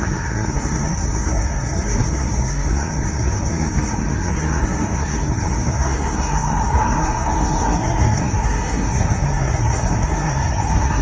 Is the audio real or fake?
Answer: fake